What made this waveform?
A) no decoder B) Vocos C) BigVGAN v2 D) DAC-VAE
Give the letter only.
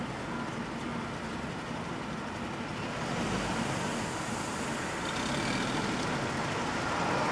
A